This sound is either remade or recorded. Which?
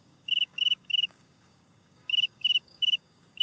remade